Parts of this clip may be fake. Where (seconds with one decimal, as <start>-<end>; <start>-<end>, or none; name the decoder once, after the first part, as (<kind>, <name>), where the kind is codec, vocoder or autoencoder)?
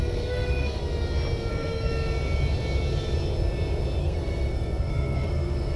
0.0-0.8 (codec, SNAC); 1.5-1.9; 4.0-5.8